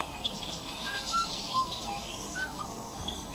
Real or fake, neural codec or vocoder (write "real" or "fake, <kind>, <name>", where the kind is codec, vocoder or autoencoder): fake, codec, SNAC